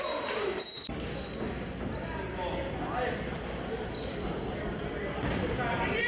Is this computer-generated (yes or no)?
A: no